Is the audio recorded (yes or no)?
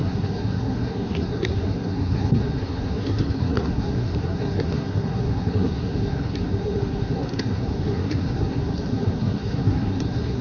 no